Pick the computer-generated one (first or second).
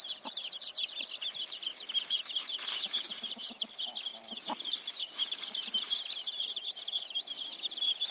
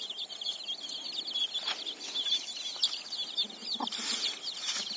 first